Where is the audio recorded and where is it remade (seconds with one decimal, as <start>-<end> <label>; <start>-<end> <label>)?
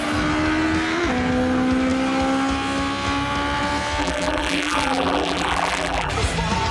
0.0-4.0 recorded; 4.0-6.1 remade; 6.1-6.7 recorded